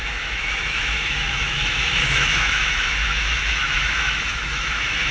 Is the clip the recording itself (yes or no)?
no